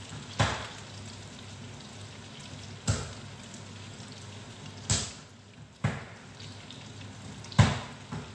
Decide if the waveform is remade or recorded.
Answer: recorded